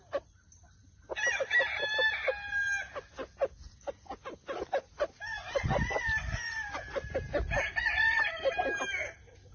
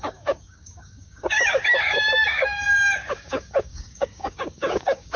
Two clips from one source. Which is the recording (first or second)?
first